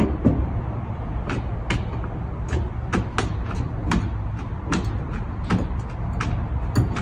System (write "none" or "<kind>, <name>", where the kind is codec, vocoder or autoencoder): none